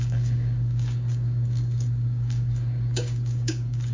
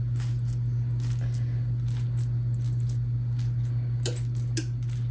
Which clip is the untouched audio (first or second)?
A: second